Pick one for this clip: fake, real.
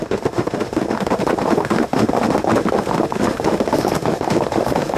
fake